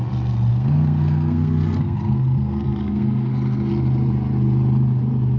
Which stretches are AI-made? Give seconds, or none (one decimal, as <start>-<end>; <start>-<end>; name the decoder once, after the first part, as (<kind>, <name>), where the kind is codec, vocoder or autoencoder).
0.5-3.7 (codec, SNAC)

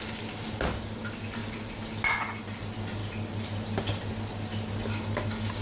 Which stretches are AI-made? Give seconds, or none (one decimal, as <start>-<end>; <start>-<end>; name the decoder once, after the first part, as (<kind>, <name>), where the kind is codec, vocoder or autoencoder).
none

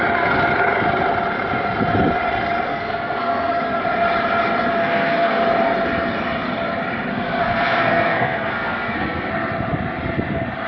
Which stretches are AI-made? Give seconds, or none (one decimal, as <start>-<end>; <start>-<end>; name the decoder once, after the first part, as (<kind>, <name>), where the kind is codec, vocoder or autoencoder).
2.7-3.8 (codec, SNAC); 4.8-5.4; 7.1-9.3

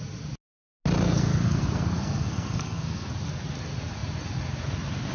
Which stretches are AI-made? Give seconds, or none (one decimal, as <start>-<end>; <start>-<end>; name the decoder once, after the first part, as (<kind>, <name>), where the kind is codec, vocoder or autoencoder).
1.0-3.1 (codec, SNAC)